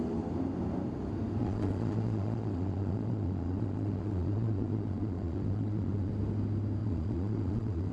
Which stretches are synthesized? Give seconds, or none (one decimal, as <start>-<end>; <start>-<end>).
1.4-6.1; 6.8-7.9